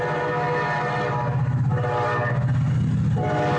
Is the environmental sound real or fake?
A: real